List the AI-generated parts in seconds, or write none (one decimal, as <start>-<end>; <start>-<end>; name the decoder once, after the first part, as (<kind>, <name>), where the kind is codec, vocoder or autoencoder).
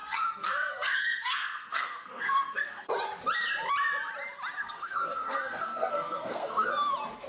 0.0-2.9 (codec, SNAC); 4.6-6.7